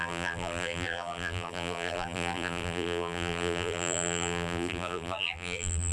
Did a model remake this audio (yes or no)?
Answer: yes